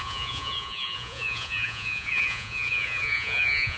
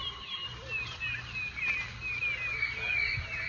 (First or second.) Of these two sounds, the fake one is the first